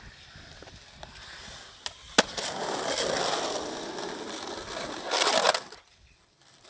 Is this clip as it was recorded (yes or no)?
yes